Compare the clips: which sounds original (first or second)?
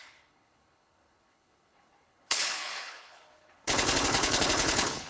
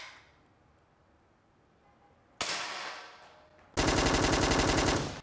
second